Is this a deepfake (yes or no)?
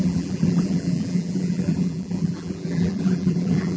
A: yes